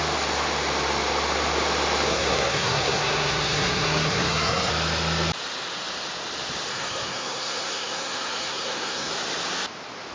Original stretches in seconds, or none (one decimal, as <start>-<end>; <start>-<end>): 0.0-2.1; 4.7-6.7; 9.1-10.1